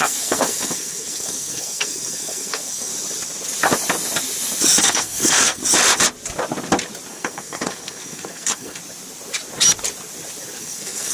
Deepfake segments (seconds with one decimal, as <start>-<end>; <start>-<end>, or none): 0.0-2.9; 4.8-5.6; 7.1-8.8; 10.6-11.1